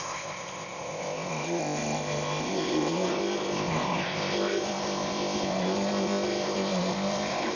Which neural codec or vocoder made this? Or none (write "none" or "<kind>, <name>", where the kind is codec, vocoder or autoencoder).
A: codec, ZipCodec